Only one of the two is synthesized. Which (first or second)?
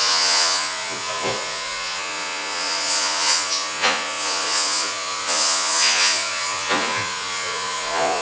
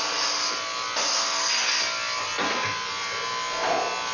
first